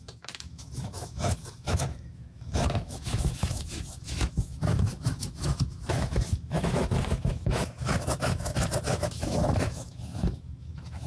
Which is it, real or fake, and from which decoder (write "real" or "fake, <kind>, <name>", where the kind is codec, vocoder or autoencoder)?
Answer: fake, autoencoder, DAC-VAE